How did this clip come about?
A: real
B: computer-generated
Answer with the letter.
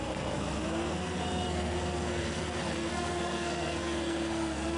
B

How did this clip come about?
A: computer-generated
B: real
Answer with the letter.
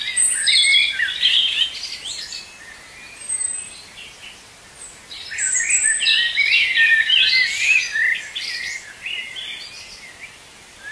B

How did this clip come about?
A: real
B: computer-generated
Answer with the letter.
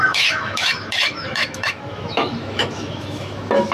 B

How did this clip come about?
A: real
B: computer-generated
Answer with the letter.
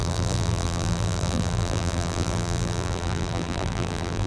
B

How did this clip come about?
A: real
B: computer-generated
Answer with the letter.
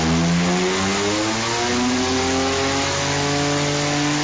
A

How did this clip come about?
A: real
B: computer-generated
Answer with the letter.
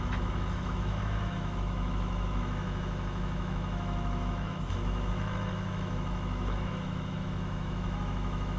B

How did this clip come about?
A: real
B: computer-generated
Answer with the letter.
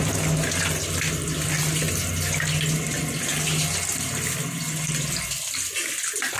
A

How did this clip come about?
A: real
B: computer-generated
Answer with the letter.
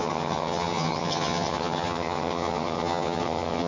B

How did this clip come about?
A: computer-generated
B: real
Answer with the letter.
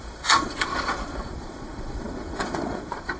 A